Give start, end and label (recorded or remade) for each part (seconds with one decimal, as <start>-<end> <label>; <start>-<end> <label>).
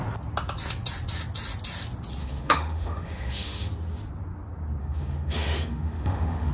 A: 0.0-2.2 recorded; 2.2-3.7 remade; 3.7-4.8 recorded; 4.8-6.5 remade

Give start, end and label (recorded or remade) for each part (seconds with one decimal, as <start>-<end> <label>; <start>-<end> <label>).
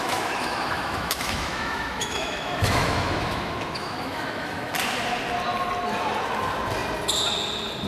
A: 0.0-4.7 remade; 4.7-7.9 recorded